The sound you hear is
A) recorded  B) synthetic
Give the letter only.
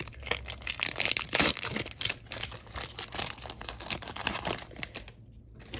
A